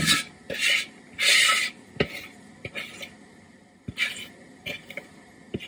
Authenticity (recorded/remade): recorded